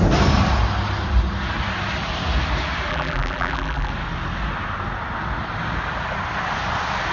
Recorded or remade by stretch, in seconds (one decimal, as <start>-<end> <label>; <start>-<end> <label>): 0.0-2.9 recorded; 2.9-3.9 remade; 3.9-7.1 recorded